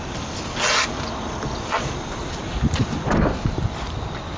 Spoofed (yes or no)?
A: no